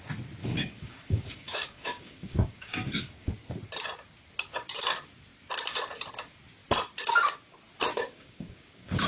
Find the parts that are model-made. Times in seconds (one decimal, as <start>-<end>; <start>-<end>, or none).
0.4-3.3; 7.9-9.1